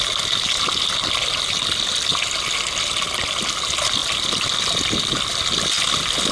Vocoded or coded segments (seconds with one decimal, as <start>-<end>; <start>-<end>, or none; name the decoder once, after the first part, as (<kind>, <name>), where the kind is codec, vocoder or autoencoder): none